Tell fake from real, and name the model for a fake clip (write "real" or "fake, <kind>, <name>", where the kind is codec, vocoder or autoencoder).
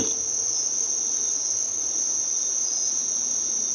real